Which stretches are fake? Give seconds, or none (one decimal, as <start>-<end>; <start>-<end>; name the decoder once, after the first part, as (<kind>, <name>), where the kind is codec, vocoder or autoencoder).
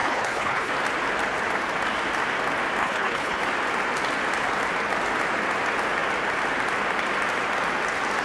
0.0-0.7 (codec, HILCodec); 2.8-3.4